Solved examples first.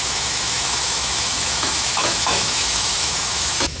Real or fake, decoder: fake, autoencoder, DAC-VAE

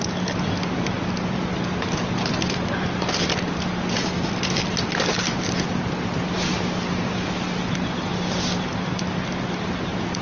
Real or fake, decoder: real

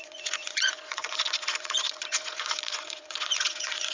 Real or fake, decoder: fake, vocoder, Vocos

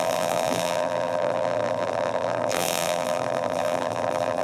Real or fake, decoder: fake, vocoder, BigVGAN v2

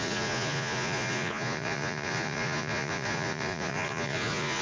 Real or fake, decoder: fake, vocoder, Vocos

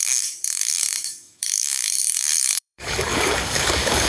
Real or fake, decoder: fake, codec, DAC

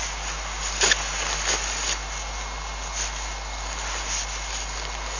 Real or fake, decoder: real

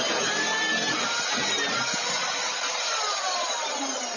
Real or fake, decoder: real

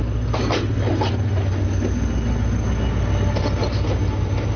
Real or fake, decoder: real